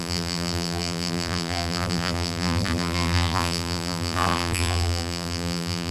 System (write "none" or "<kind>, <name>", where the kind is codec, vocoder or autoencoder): vocoder, BigVGAN v2